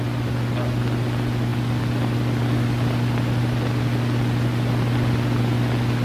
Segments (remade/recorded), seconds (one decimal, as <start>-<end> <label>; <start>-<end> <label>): 0.0-6.0 recorded